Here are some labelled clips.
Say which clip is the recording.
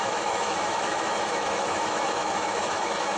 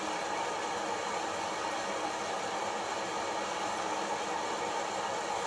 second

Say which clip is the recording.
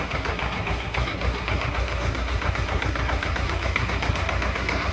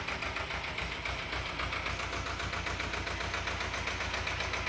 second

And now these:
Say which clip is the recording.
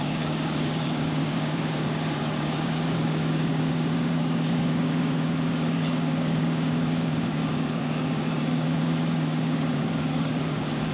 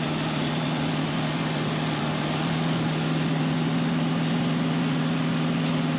second